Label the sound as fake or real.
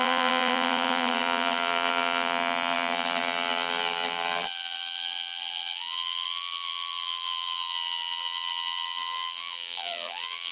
fake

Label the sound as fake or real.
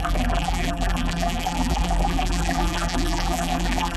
fake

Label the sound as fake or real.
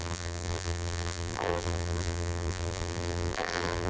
fake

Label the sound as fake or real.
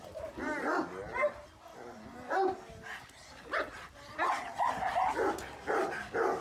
real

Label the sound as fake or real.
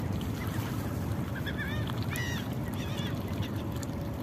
real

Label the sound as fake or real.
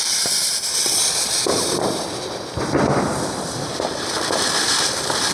fake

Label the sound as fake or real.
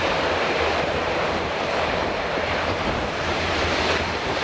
fake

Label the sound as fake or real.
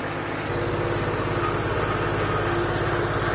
real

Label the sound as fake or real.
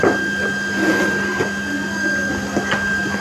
fake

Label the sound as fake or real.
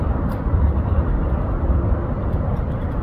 real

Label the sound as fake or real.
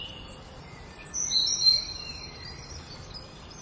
fake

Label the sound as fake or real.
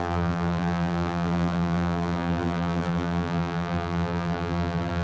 fake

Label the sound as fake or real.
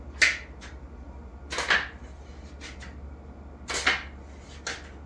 real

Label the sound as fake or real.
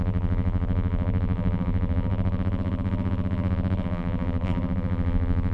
fake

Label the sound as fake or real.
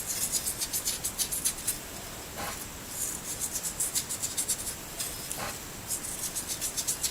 real